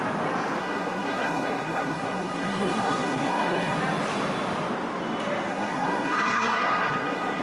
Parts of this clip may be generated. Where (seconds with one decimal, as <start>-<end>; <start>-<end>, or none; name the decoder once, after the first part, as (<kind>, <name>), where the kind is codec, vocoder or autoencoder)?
0.6-3.8 (codec, SNAC); 5.5-7.4